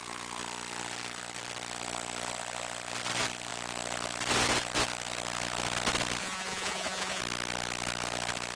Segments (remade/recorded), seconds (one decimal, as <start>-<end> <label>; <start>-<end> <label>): 0.0-6.2 recorded; 6.2-7.2 remade; 7.2-8.6 recorded